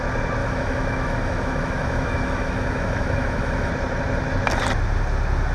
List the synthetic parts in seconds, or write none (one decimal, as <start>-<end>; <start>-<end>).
0.4-3.7